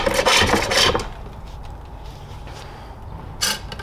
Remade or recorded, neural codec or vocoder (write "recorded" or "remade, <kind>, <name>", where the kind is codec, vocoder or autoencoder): recorded